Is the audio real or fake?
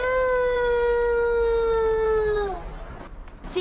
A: real